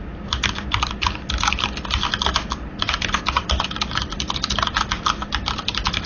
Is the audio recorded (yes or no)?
yes